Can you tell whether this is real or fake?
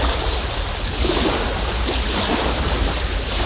real